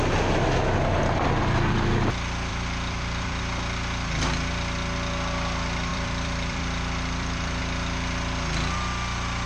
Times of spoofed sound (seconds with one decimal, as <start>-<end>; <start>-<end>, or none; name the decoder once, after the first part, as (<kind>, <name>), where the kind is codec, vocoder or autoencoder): 2.5-3.4 (vocoder, BigVGAN v2); 5.9-7.6